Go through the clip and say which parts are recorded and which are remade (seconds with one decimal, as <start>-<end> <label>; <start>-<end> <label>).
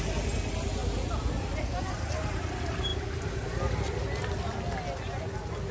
0.0-5.7 recorded